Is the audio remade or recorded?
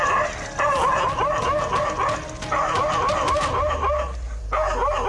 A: recorded